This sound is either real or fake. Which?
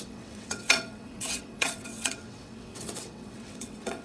fake